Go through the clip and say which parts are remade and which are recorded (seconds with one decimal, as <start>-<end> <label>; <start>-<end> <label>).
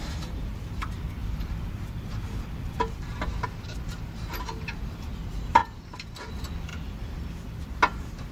0.0-1.2 recorded; 1.2-2.8 remade; 2.8-8.3 recorded